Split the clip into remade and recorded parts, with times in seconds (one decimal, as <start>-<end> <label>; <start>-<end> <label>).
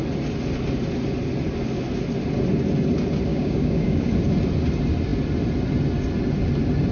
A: 0.0-3.3 recorded; 3.3-4.1 remade; 4.1-6.9 recorded